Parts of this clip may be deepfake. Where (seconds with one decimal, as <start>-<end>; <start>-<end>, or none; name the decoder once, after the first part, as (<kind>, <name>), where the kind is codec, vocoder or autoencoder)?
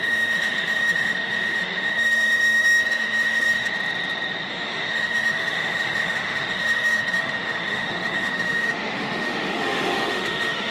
0.0-3.7 (autoencoder, DAC-VAE); 4.5-10.7